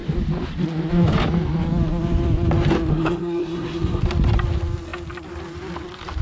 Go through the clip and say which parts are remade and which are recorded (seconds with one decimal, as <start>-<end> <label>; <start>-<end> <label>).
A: 0.0-2.9 recorded; 2.9-4.0 remade; 4.0-6.2 recorded